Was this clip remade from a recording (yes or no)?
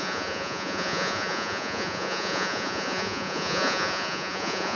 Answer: yes